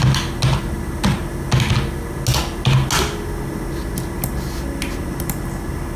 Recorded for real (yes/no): yes